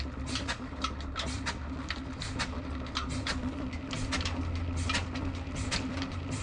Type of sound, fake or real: real